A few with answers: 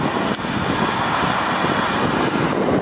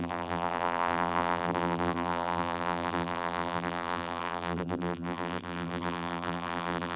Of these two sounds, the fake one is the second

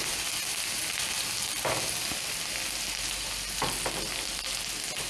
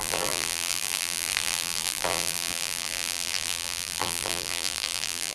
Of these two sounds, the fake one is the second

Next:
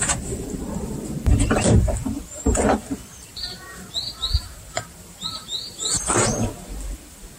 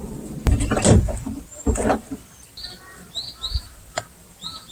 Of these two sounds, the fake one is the first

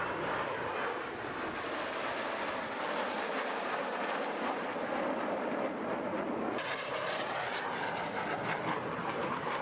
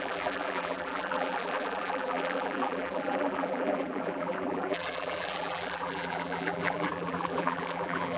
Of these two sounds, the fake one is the second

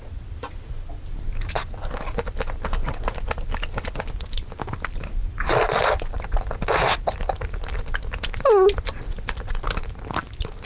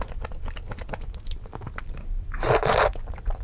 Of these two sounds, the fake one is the first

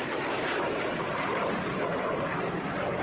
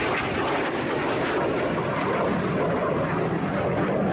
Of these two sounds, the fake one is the first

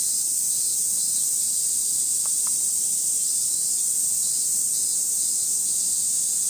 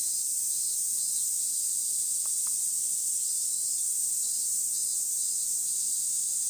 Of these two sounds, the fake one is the first